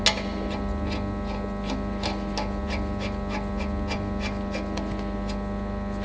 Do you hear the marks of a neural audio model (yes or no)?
no